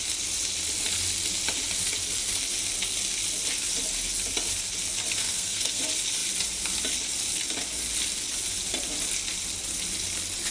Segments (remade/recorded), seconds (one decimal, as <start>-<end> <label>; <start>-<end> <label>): 0.0-5.2 recorded; 5.2-5.8 remade; 5.8-10.5 recorded